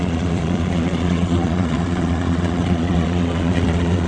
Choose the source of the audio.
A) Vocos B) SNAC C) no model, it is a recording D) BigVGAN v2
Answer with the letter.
A